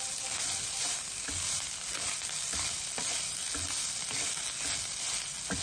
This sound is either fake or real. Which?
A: real